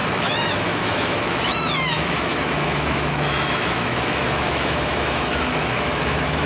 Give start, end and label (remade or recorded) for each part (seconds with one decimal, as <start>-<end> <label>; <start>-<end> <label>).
0.0-6.5 remade